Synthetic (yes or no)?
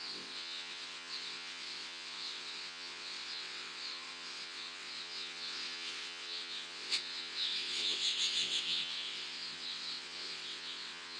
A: yes